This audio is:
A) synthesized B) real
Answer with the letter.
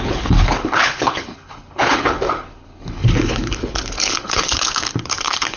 A